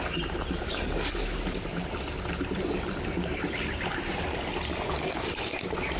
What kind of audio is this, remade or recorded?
recorded